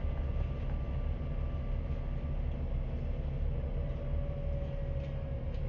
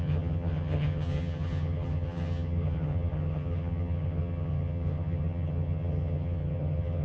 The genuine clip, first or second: first